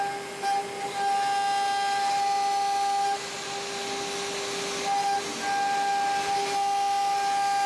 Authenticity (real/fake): real